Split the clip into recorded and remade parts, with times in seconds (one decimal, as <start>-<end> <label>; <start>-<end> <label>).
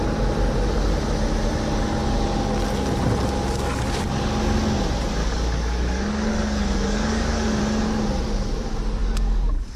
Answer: 0.0-5.2 recorded; 5.2-7.6 remade; 7.6-9.0 recorded; 9.0-9.8 remade